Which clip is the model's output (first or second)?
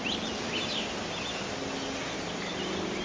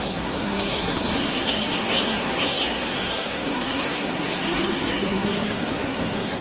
second